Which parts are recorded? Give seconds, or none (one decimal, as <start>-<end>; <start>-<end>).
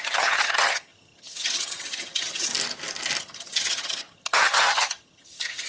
2.5-3.2